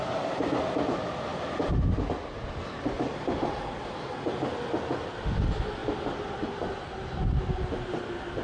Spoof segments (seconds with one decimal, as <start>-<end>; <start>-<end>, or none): none